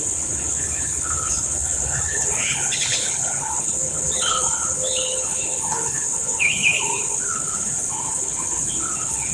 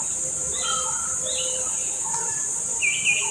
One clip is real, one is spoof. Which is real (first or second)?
second